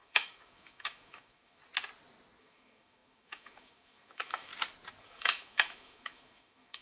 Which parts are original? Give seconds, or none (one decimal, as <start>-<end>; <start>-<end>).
1.6-2.4; 4.5-5.0